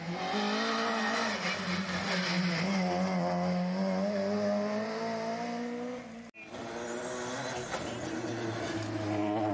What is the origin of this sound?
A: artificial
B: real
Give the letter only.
B